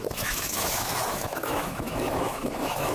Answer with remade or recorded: remade